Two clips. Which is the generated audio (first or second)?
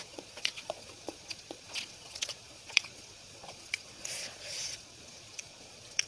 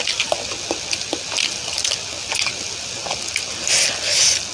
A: first